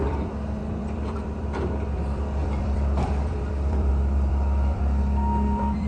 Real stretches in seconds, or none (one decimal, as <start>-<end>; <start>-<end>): none